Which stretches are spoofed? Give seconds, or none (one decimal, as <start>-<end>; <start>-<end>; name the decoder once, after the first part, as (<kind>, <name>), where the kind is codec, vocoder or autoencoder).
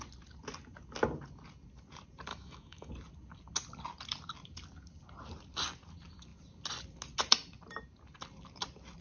2.3-2.9 (autoencoder, DAC-VAE)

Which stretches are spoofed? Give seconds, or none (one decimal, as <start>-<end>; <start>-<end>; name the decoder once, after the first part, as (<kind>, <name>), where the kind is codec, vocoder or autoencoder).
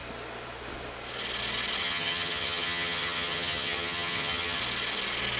1.8-4.6 (vocoder, HiFi-GAN)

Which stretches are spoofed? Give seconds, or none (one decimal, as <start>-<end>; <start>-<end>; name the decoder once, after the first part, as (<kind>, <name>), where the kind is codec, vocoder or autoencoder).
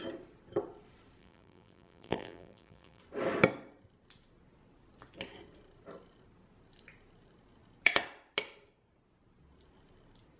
1.2-3.0 (vocoder, BigVGAN v2)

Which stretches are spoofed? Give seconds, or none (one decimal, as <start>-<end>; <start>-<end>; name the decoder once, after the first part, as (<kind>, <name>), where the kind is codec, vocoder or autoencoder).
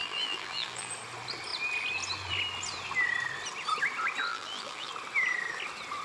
0.0-0.9 (vocoder, BigVGAN v2); 4.3-4.9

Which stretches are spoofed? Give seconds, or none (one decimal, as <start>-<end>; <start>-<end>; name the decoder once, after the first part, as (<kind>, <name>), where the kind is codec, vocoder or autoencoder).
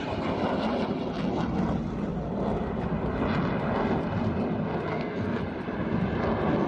4.9-5.4 (codec, SNAC)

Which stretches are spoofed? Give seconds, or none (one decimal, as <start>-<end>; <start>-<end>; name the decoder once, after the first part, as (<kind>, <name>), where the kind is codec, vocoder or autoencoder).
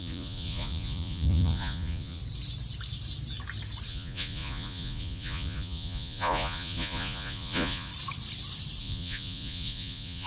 0.0-2.2 (vocoder, Vocos); 3.9-7.9; 8.8-10.3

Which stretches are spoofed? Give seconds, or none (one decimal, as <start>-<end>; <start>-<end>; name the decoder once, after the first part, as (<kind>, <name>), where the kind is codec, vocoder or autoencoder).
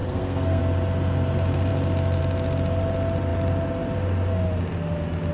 0.0-0.6 (codec, SNAC)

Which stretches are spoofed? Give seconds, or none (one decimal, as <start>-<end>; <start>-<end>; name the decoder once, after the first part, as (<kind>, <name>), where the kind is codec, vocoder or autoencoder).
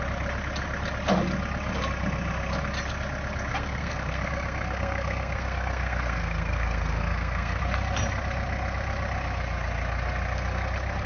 3.5-7.6 (codec, SNAC)